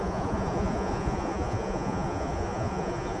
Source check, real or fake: fake